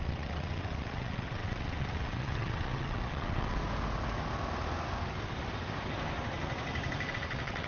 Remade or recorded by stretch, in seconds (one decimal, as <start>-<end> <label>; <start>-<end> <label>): 0.0-3.6 remade; 3.6-7.1 recorded; 7.1-7.7 remade